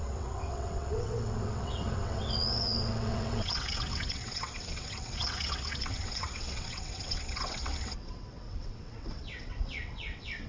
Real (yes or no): no